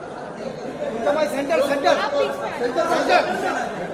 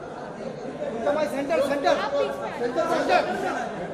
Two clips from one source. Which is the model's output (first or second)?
first